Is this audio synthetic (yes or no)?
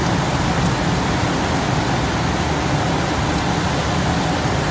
no